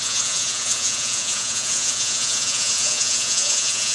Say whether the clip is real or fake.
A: fake